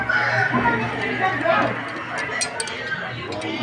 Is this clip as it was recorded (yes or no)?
yes